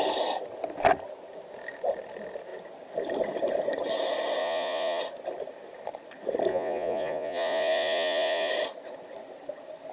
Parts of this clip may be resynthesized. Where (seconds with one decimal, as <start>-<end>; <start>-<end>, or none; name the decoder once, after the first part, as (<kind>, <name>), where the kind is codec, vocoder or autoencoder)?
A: 4.4-5.0 (vocoder, Vocos); 6.5-8.5